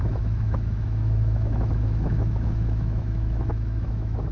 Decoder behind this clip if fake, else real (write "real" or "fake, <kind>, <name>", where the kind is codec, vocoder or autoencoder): fake, autoencoder, DAC-VAE